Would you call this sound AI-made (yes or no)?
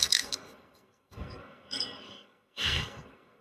yes